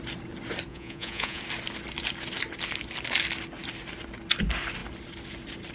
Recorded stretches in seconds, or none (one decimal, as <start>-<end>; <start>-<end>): 0.0-0.7; 1.4-5.7